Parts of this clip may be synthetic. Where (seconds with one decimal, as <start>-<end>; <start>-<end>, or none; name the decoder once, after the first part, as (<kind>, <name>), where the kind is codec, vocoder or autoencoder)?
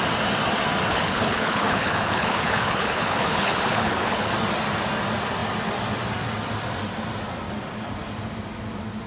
0.9-4.3 (codec, HILCodec)